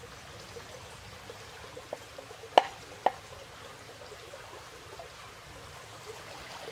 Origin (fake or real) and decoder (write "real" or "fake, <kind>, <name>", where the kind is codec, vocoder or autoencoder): real